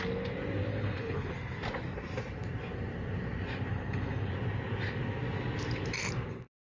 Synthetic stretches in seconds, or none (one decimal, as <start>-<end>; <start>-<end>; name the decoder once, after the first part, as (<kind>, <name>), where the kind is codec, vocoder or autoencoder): 0.7-1.3 (codec, HILCodec); 3.7-4.3